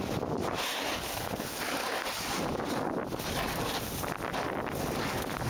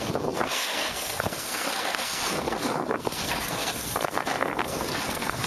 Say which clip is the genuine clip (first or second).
first